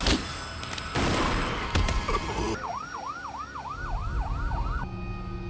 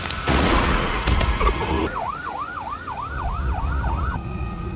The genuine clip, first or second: first